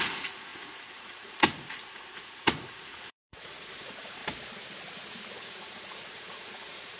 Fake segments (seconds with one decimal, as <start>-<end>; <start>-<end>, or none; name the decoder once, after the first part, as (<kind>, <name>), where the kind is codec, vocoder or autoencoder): 0.0-4.2 (vocoder, Vocos); 5.4-7.0